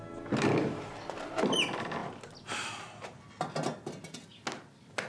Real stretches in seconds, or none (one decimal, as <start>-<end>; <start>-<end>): 0.0-5.1